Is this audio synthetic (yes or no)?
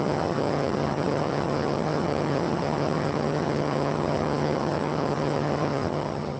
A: yes